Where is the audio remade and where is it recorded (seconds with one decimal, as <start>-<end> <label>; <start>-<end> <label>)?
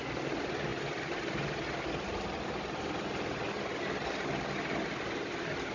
0.0-5.7 recorded